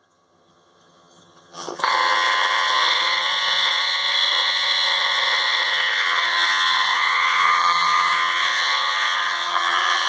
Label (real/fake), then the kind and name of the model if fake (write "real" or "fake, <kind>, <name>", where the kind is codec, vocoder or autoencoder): fake, vocoder, HiFi-GAN